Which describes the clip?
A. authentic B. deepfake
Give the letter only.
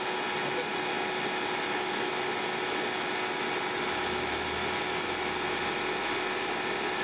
A